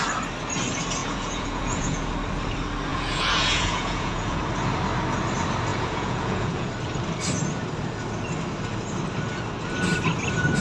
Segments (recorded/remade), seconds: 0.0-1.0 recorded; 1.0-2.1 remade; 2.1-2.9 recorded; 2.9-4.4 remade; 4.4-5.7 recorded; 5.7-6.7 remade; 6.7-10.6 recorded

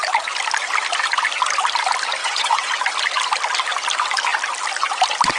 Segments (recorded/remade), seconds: 0.0-2.2 recorded; 2.2-2.7 remade; 2.7-5.4 recorded

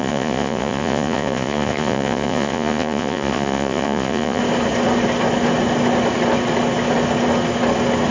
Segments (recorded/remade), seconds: 0.0-4.4 remade; 4.4-8.1 recorded

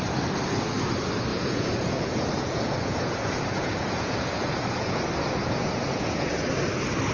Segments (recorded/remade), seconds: 0.0-1.3 recorded; 1.3-5.0 remade; 5.0-5.4 recorded; 5.4-6.4 remade; 6.4-7.1 recorded